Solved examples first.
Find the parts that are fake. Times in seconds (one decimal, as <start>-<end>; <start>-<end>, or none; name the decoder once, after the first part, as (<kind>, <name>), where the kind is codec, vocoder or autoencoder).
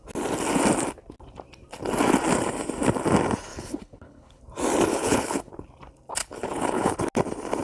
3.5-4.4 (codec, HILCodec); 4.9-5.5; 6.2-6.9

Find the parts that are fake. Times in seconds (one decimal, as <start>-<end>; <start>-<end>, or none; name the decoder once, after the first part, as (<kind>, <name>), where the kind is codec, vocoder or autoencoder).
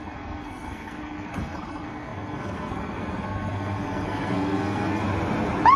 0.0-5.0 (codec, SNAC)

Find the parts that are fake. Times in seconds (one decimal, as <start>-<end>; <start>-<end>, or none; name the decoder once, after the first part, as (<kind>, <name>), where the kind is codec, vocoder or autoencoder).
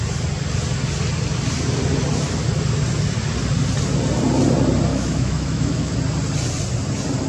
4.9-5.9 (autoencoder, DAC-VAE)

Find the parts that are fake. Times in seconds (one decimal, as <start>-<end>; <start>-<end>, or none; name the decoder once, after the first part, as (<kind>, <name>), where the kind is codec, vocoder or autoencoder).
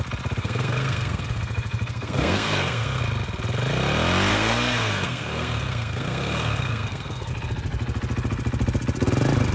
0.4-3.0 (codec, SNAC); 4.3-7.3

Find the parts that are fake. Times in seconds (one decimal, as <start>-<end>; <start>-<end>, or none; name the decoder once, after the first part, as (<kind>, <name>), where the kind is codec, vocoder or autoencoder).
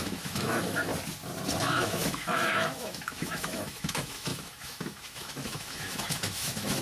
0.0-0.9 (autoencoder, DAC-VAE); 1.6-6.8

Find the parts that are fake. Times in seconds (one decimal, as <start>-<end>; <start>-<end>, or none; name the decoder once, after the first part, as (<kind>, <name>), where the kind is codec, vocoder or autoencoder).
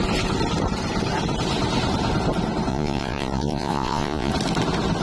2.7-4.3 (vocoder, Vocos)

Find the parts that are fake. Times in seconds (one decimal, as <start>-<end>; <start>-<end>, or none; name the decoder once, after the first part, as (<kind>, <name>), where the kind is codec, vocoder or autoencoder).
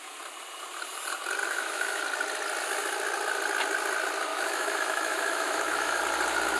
1.4-2.0 (autoencoder, DAC-VAE); 4.3-6.0